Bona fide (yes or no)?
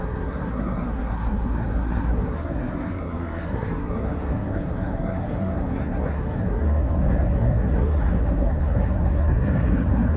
no